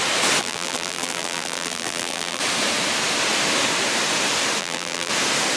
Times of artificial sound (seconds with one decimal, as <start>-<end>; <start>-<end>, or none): 0.4-2.4; 4.6-5.1